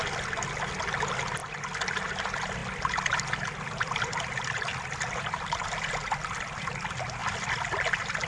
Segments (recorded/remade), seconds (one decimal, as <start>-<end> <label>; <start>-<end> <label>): 0.0-4.7 recorded; 4.7-6.7 remade; 6.7-8.3 recorded